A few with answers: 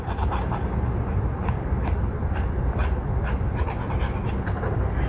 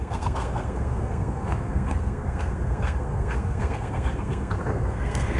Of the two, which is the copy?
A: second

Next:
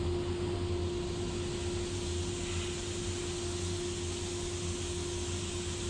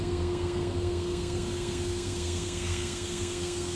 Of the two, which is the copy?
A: second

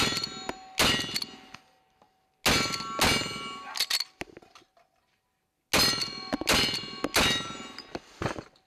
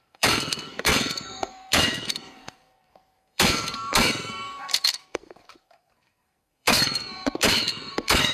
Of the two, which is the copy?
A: second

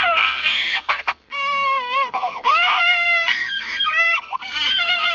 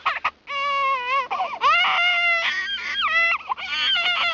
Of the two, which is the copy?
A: first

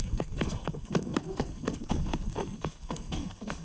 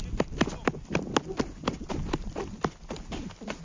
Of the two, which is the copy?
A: first